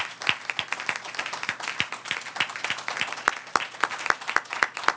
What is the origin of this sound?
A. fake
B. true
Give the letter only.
B